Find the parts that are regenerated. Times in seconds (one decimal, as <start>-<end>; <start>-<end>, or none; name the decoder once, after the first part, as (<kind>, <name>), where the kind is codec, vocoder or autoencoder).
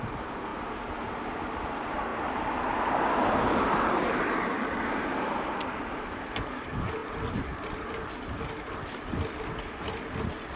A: none